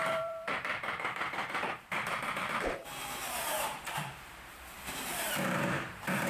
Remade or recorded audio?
remade